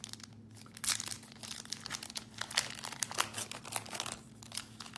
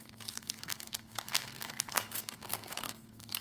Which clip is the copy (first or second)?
second